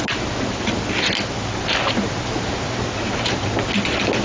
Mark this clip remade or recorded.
recorded